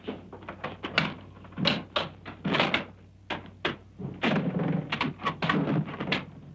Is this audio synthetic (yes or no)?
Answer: no